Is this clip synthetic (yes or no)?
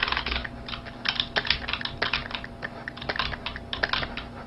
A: no